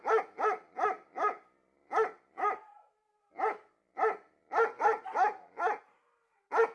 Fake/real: real